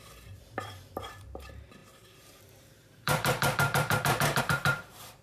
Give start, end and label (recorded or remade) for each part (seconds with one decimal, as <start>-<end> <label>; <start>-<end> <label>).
0.0-5.2 remade